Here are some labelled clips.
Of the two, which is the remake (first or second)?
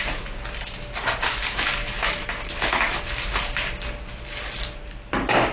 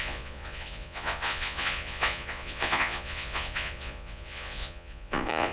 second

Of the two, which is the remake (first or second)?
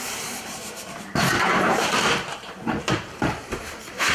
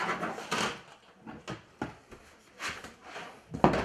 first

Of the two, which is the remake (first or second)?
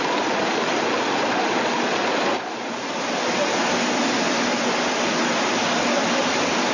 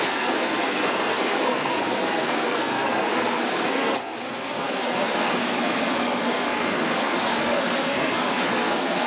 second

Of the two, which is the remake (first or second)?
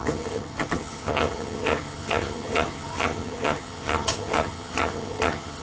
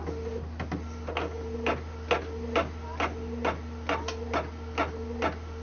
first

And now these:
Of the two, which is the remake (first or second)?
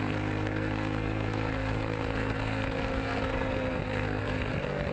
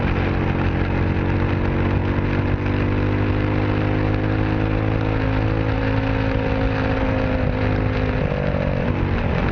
first